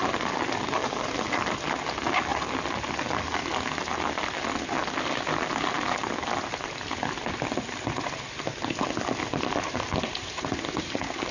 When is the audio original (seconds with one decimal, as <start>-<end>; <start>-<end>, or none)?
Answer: 0.0-11.3